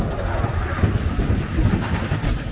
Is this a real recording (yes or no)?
yes